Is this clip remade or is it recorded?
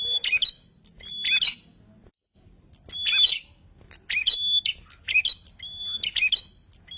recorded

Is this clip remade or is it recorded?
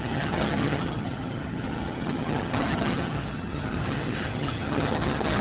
remade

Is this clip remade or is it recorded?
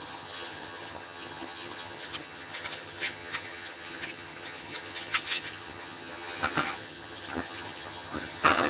remade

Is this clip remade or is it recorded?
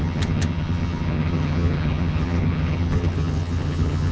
remade